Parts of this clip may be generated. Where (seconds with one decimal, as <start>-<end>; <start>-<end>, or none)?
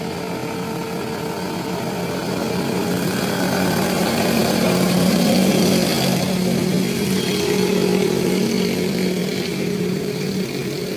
2.2-5.7; 9.2-10.4